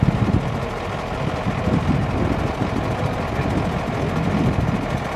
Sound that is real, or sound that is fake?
real